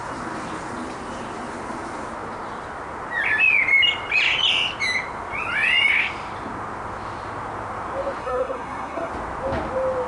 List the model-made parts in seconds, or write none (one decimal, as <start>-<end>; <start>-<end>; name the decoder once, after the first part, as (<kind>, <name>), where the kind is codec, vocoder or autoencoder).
8.2-9.1 (codec, SNAC)